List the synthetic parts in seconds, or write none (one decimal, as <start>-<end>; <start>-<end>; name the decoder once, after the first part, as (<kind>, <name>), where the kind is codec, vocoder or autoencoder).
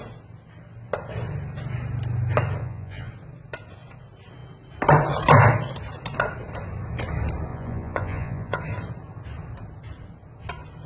2.6-3.1 (vocoder, Vocos); 7.5-8.6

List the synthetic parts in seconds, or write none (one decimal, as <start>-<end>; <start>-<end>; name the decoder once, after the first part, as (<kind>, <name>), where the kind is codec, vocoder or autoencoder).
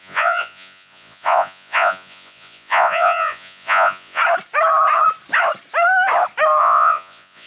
0.0-4.2 (vocoder, Vocos); 6.6-7.5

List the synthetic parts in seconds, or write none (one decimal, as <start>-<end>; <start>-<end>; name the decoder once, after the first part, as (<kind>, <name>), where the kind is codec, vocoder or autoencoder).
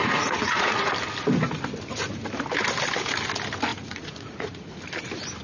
0.0-0.9 (vocoder, Vocos); 3.7-4.8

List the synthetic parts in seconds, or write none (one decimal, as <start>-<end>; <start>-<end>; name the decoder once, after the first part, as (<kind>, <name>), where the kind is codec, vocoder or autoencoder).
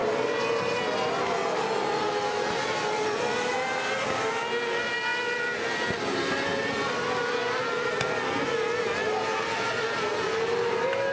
none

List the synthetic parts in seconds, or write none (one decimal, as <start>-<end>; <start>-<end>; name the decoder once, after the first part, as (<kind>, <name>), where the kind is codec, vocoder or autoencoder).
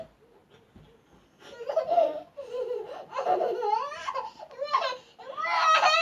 none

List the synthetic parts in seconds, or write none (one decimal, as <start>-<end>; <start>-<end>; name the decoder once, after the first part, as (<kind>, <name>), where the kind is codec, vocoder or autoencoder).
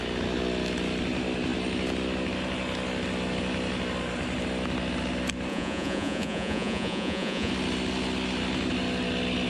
5.5-7.5 (vocoder, Vocos)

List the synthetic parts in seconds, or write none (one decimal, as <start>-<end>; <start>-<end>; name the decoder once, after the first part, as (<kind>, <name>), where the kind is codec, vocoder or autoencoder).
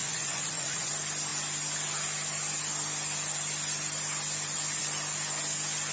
0.0-0.9 (vocoder, Vocos)